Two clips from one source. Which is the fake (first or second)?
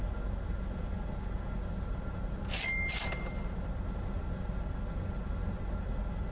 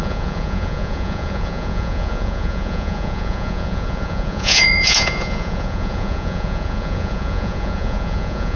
second